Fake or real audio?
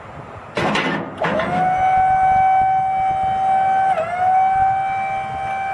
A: real